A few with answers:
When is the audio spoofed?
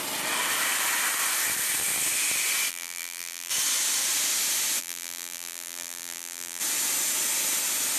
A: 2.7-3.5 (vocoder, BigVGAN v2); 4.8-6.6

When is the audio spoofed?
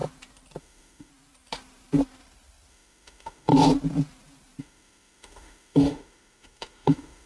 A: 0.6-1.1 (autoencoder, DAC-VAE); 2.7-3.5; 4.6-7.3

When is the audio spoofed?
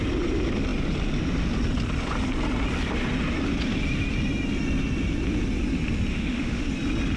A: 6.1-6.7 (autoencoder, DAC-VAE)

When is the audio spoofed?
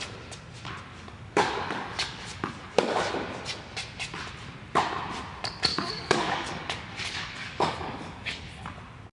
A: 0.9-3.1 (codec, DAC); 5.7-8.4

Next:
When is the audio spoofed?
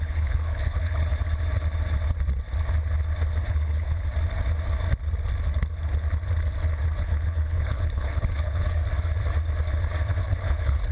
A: 0.0-1.1 (codec, HILCodec); 3.5-4.1; 7.0-8.8; 10.2-10.9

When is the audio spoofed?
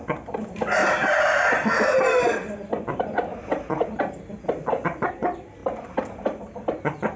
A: none